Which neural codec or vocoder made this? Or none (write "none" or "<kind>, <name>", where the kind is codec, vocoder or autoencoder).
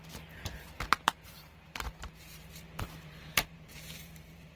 vocoder, BigVGAN v2